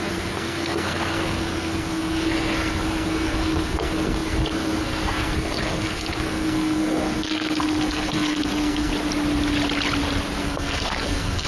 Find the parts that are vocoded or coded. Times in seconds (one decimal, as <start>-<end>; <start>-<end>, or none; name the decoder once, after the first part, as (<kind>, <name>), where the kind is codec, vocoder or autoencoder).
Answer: 0.0-8.9 (codec, SNAC); 10.4-11.5